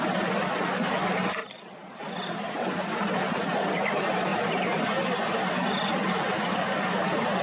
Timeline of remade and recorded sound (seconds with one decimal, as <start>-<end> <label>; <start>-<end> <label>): 0.0-7.4 recorded